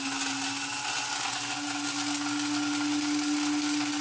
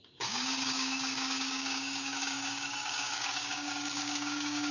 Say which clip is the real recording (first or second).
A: first